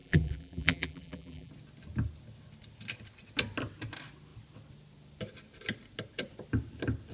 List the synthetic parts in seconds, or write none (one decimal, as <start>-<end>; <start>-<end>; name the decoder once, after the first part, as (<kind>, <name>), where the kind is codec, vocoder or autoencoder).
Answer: 0.0-1.5 (vocoder, BigVGAN v2)